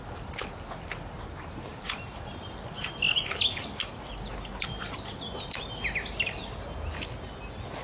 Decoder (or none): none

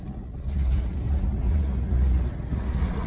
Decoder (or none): vocoder, Vocos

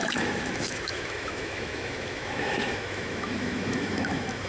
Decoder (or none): autoencoder, DAC-VAE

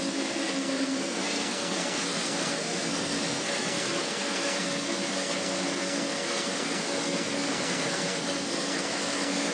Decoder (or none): codec, SNAC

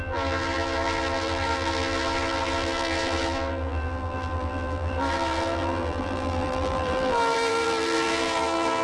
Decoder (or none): vocoder, BigVGAN v2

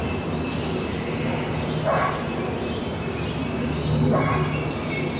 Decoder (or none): none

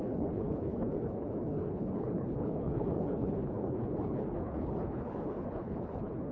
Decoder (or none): codec, HILCodec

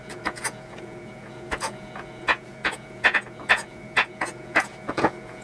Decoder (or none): vocoder, Vocos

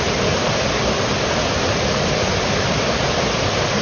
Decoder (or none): none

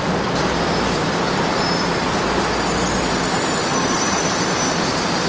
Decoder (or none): none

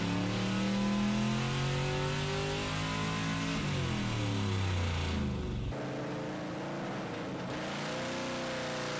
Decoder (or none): none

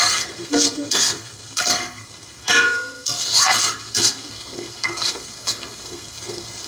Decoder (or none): codec, SNAC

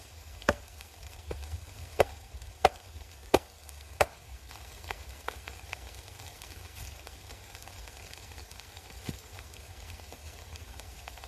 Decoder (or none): codec, SNAC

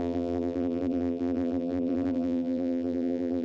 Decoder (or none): vocoder, BigVGAN v2